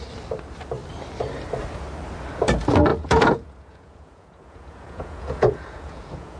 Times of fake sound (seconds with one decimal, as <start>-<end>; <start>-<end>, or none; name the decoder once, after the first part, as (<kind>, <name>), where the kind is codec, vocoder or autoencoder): 2.9-6.4 (vocoder, Vocos)